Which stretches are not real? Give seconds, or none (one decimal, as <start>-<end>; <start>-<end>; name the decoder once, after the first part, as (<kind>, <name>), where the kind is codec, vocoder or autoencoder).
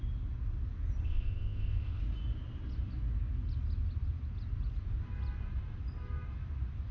1.0-2.0 (codec, ZipCodec)